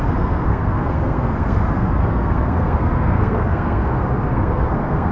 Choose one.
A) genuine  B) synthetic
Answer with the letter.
B